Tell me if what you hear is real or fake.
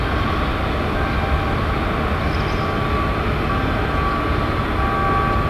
real